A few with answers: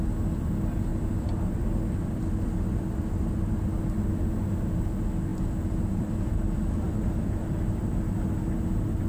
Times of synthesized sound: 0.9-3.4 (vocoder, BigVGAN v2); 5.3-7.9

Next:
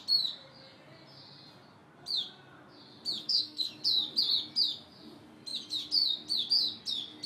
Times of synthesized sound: 3.2-3.7 (codec, SNAC)

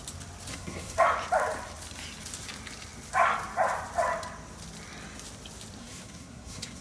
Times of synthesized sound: 0.5-1.0 (codec, SNAC); 5.8-6.8

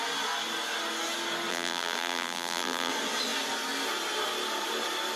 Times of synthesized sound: 1.5-2.9 (vocoder, BigVGAN v2)

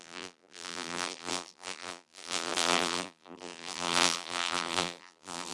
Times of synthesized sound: 0.0-5.5 (vocoder, BigVGAN v2)